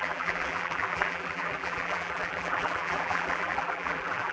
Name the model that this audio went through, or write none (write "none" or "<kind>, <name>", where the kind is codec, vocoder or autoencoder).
vocoder, BigVGAN v2